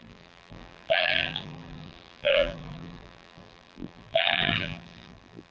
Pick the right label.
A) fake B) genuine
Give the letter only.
A